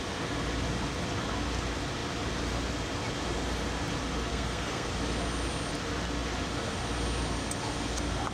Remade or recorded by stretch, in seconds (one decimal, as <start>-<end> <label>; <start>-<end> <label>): 0.0-4.3 recorded; 4.3-4.9 remade; 4.9-8.3 recorded